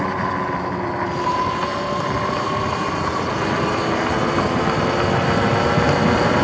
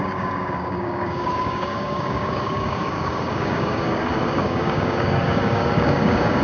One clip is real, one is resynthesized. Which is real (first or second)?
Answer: first